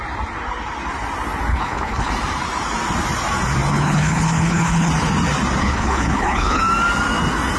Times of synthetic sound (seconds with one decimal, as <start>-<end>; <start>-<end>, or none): 1.5-2.1; 3.7-4.9; 5.6-6.6